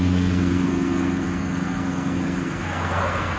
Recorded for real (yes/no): no